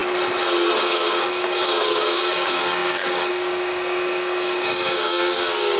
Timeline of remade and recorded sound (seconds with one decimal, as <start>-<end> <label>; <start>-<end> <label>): 0.0-0.8 recorded; 0.8-5.8 remade